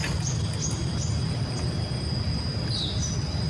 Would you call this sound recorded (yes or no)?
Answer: yes